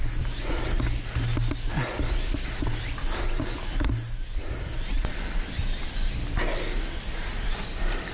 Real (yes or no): yes